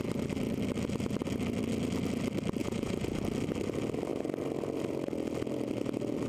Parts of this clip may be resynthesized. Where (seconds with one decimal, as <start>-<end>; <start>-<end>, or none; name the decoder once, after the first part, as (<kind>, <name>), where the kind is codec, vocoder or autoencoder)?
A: 2.6-3.2 (vocoder, Vocos)